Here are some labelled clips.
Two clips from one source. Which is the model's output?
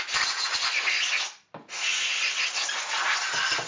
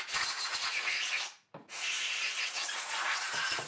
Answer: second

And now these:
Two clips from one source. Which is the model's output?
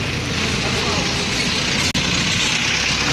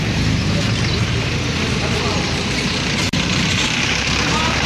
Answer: second